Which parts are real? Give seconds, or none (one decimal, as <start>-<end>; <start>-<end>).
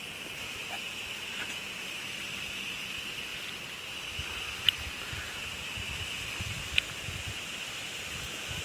0.0-0.4; 2.0-8.6